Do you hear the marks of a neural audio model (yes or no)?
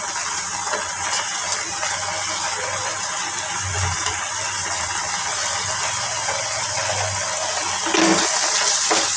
no